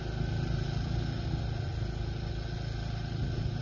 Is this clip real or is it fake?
real